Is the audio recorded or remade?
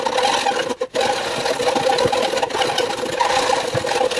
recorded